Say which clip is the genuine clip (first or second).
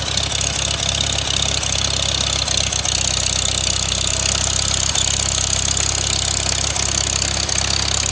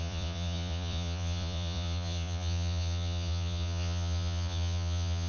first